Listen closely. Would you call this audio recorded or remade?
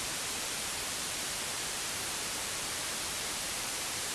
remade